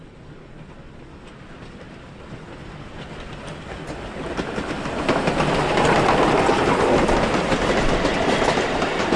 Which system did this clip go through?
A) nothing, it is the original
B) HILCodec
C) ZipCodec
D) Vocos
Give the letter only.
A